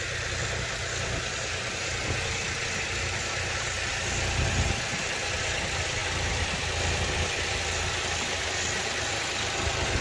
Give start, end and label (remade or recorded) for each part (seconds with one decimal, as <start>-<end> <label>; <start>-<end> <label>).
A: 0.0-6.0 recorded; 6.0-10.0 remade